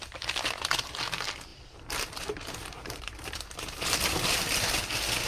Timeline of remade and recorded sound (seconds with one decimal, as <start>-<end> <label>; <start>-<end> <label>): 0.0-1.5 recorded; 1.5-4.7 remade; 4.7-5.3 recorded